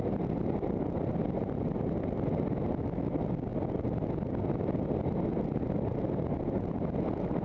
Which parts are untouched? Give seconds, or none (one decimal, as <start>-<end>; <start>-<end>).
0.0-7.4